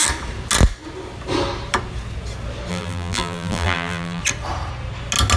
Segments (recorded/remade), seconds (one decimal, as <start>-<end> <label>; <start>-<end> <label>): 0.0-2.7 recorded; 2.7-4.2 remade; 4.2-5.4 recorded